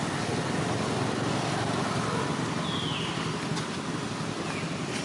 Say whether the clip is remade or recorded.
recorded